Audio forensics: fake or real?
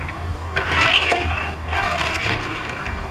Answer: fake